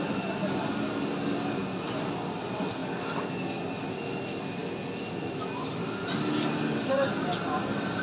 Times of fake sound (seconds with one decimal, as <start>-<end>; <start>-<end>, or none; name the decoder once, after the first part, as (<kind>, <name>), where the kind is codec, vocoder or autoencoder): none